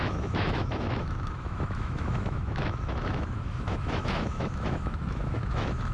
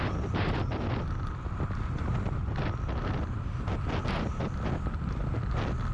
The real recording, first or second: second